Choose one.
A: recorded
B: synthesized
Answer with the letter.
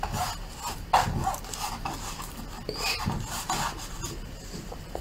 A